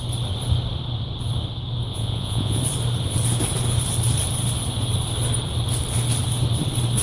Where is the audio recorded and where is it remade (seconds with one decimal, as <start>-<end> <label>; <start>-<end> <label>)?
0.0-1.9 recorded; 1.9-2.6 remade; 2.6-7.0 recorded